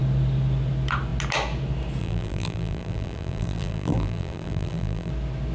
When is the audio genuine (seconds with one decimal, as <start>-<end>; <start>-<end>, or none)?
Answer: 0.0-2.0; 5.1-5.5